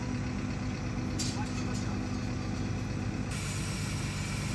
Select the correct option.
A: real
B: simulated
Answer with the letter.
A